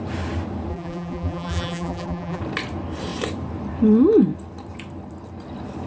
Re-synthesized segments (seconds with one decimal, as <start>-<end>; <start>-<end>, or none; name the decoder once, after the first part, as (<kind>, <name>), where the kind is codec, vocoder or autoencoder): 0.7-2.4 (vocoder, BigVGAN v2)